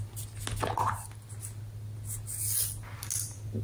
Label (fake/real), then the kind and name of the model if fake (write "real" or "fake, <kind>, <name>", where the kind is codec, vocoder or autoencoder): real